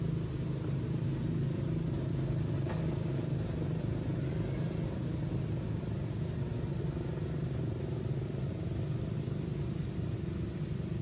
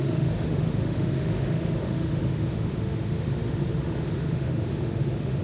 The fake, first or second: second